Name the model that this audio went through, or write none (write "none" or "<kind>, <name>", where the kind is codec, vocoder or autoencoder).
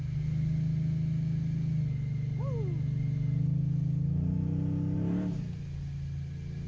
none